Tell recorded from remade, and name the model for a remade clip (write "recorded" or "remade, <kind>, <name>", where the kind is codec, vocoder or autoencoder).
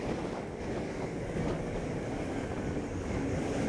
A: remade, codec, DAC